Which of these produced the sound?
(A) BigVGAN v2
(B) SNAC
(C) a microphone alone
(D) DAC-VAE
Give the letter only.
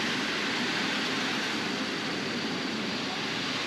C